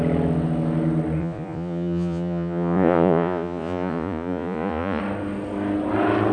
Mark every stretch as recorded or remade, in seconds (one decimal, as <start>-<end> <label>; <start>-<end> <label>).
0.0-1.2 recorded; 1.2-5.0 remade; 5.0-6.3 recorded